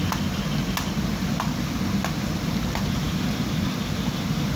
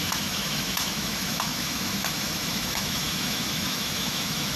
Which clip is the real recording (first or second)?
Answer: first